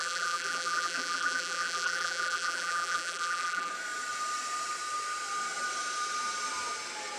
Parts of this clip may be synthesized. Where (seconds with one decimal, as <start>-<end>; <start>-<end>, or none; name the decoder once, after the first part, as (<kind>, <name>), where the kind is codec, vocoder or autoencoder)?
0.0-3.7 (vocoder, BigVGAN v2)